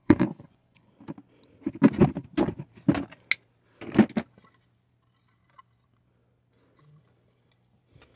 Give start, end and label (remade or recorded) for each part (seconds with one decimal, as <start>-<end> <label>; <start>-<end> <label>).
0.0-0.9 remade; 0.9-8.2 recorded